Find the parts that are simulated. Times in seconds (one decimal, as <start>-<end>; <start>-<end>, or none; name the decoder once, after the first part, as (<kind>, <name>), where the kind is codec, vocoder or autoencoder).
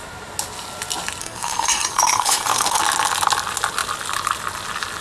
1.2-2.8 (codec, SNAC)